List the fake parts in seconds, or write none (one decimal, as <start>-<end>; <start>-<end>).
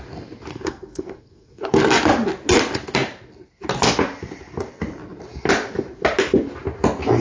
0.5-1.9